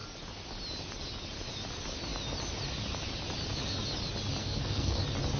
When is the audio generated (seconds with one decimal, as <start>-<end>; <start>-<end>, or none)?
4.4-5.0

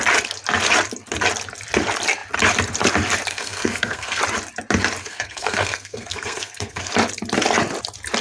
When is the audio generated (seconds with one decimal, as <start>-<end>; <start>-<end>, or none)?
3.3-4.2; 5.0-6.9